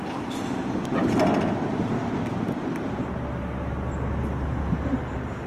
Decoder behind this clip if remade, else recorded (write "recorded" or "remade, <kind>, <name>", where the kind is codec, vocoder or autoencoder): recorded